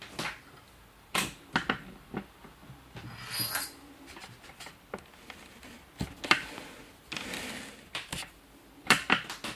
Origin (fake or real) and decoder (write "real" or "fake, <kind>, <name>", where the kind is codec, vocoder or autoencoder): real